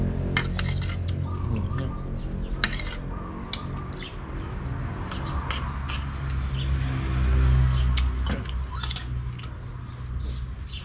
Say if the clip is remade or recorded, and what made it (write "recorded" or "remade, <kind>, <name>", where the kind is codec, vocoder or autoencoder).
recorded